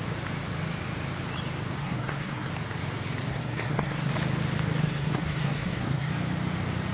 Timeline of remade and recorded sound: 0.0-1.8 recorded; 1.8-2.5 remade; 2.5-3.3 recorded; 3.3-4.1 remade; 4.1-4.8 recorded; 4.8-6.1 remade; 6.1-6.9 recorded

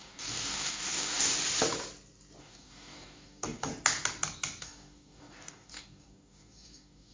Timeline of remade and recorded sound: 0.0-1.3 remade; 1.3-2.4 recorded; 2.4-3.7 remade; 3.7-4.6 recorded; 4.6-7.1 remade

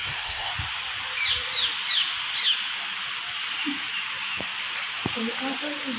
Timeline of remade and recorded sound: 0.0-0.5 remade; 0.5-6.0 recorded

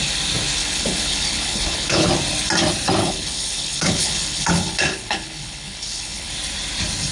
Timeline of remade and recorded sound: 0.0-0.6 recorded; 0.6-2.1 remade; 2.1-3.0 recorded; 3.0-6.3 remade; 6.3-7.1 recorded

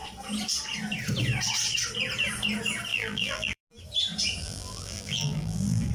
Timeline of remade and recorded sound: 0.0-2.9 recorded; 2.9-3.6 remade; 3.6-4.4 recorded; 4.4-5.9 remade